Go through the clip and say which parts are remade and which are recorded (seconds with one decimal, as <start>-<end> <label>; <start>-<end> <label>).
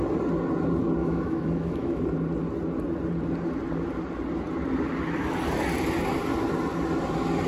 0.0-1.0 recorded; 1.0-2.0 remade; 2.0-7.5 recorded